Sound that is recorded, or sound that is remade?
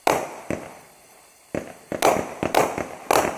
recorded